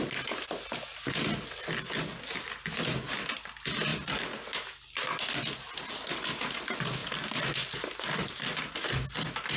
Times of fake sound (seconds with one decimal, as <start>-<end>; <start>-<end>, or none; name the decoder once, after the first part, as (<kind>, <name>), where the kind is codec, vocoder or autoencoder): none